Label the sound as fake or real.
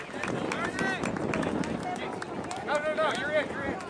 real